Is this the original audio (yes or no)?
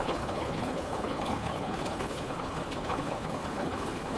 no